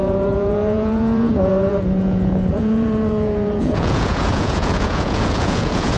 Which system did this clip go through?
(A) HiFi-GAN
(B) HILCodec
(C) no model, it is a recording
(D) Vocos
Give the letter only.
D